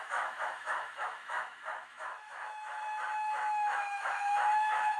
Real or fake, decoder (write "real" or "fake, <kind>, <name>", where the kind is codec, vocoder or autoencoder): fake, autoencoder, DAC-VAE